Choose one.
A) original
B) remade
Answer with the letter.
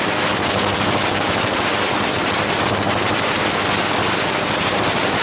A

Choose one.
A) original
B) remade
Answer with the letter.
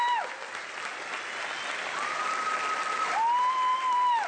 B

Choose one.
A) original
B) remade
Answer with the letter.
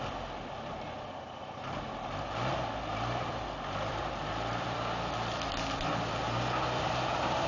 A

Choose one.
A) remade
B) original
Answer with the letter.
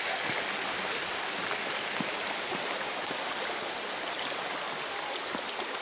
B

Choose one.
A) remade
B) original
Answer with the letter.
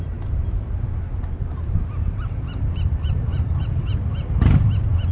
A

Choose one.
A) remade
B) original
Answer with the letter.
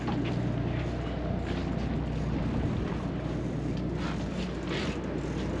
B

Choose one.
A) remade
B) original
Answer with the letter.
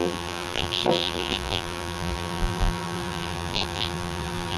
A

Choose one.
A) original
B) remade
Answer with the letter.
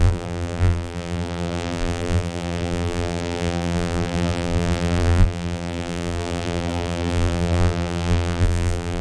B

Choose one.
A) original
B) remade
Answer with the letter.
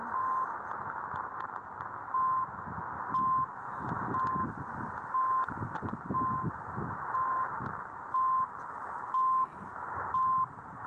A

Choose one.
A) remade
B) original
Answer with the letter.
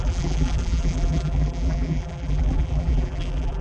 A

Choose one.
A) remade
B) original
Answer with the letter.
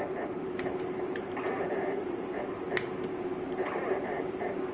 A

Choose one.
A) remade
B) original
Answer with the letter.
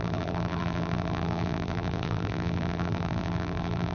A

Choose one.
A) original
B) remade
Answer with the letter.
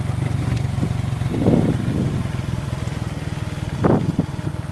A